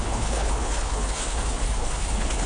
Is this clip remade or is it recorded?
remade